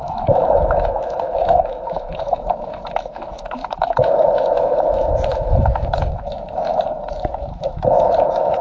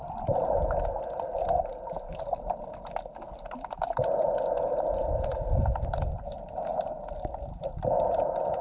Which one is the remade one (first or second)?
first